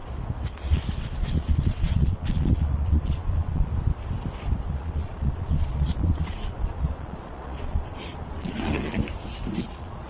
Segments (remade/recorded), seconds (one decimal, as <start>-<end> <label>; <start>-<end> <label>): 0.0-0.5 recorded; 0.5-3.7 remade; 3.7-4.7 recorded; 4.7-9.0 remade; 9.0-9.6 recorded; 9.6-10.1 remade

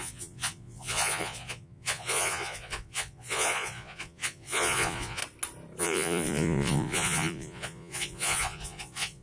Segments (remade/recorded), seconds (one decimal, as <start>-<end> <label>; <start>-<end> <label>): 0.0-5.2 remade; 5.2-5.8 recorded; 5.8-9.2 remade

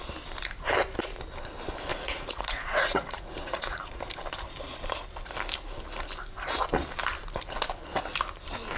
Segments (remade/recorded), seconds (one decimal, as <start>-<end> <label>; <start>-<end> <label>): 0.0-1.9 recorded; 1.9-4.0 remade; 4.0-8.8 recorded

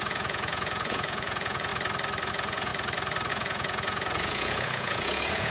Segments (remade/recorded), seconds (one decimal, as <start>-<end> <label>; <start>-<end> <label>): 0.0-1.7 remade; 1.7-2.3 recorded; 2.3-2.7 remade; 2.7-3.3 recorded; 3.3-5.5 remade

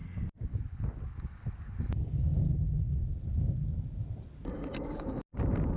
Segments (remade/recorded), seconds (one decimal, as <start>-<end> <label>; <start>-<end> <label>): 0.0-5.8 recorded

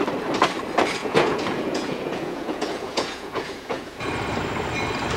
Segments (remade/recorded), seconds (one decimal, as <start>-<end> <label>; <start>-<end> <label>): 0.0-1.0 recorded; 1.0-4.1 remade; 4.1-5.2 recorded

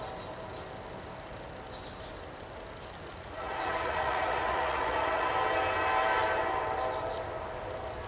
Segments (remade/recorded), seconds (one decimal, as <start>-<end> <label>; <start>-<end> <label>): 0.0-3.1 recorded; 3.1-5.3 remade; 5.3-8.1 recorded